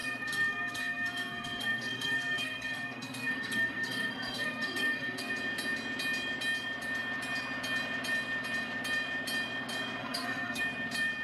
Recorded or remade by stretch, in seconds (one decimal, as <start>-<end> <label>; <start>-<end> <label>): 0.0-5.3 remade; 5.3-10.0 recorded; 10.0-10.6 remade; 10.6-11.2 recorded